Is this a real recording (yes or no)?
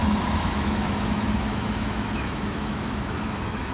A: no